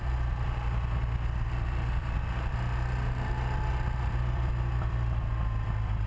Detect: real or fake real